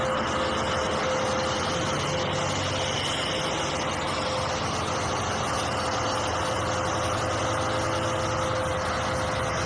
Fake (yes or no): no